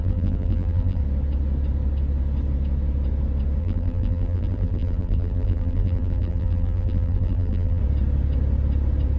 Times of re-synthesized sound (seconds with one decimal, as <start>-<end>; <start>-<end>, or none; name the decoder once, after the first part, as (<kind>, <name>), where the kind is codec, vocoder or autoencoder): 0.0-1.0 (vocoder, BigVGAN v2); 3.6-7.8